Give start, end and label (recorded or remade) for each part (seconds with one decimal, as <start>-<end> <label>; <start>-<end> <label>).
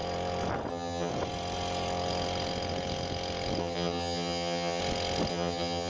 0.0-0.7 recorded; 0.7-1.1 remade; 1.1-3.6 recorded; 3.6-4.8 remade; 4.8-5.3 recorded; 5.3-5.9 remade